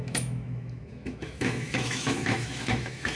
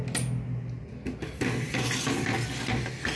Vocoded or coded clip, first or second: first